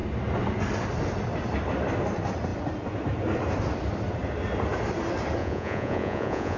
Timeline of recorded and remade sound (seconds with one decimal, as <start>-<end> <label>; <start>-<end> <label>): 0.0-5.4 recorded; 5.4-6.6 remade